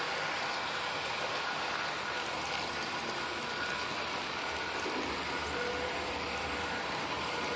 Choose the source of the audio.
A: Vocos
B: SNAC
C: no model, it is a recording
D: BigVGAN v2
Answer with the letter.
C